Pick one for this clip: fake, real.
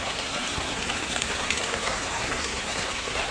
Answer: fake